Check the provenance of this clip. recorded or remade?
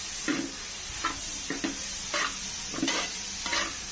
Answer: recorded